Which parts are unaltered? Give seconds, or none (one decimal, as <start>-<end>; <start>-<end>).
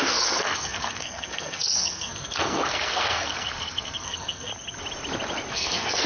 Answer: 4.5-5.5